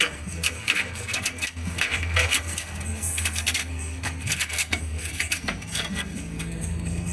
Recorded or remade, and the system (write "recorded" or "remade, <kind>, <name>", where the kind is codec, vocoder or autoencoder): remade, codec, SNAC